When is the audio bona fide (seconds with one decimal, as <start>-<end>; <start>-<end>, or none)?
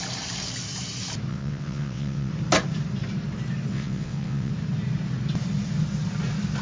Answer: 0.0-1.3; 2.3-3.7; 4.5-6.6